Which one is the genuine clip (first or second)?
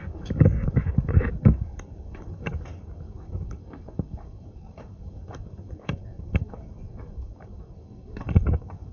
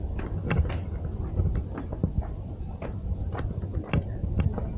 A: second